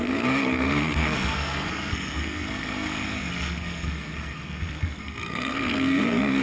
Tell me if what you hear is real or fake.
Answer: fake